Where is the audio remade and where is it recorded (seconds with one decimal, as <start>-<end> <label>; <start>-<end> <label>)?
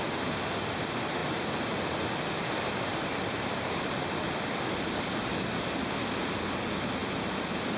0.0-1.2 recorded; 1.2-3.3 remade; 3.3-7.8 recorded